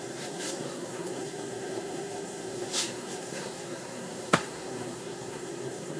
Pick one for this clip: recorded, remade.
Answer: remade